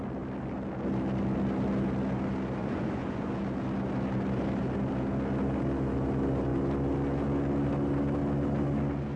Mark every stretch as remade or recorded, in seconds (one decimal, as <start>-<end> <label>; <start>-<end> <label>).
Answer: 0.0-2.6 recorded; 2.6-3.3 remade; 3.3-9.2 recorded